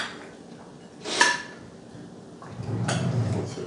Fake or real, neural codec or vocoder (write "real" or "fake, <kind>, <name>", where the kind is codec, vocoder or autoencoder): real